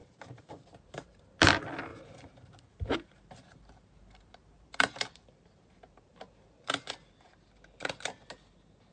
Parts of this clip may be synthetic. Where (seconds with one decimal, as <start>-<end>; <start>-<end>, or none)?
0.0-1.2; 1.9-6.7